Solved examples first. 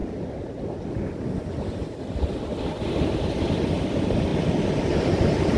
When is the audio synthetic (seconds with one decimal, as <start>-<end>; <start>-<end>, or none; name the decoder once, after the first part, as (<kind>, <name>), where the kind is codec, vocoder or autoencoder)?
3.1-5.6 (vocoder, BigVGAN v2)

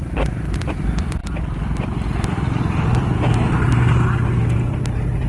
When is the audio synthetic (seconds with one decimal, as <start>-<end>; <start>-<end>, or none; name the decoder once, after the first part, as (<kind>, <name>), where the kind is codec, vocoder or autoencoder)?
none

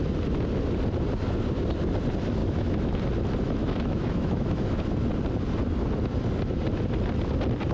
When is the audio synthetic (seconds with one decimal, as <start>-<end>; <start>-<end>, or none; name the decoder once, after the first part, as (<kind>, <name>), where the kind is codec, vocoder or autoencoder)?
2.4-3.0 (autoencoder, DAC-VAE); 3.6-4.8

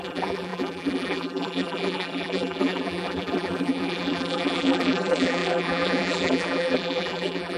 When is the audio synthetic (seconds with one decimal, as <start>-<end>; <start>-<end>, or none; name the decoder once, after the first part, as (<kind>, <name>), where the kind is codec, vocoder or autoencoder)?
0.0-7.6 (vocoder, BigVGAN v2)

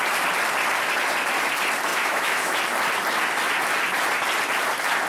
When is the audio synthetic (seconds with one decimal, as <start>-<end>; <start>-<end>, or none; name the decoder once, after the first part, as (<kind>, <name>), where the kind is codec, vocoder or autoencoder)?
1.9-2.6 (autoencoder, DAC-VAE)

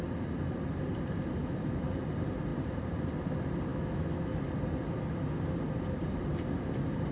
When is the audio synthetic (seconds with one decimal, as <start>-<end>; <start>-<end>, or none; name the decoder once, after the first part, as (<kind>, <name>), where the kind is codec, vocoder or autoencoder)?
1.4-2.0 (autoencoder, DAC-VAE); 3.7-4.4